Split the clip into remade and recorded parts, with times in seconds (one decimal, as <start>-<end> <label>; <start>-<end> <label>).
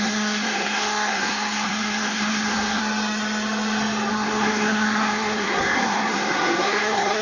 0.0-2.8 remade; 2.8-4.1 recorded; 4.1-7.2 remade